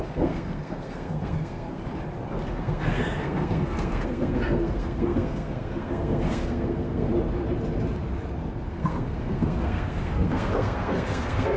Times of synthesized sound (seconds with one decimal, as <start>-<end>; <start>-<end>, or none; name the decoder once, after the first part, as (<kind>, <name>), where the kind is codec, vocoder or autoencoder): 0.0-1.8 (codec, SNAC); 2.5-7.1; 8.7-11.6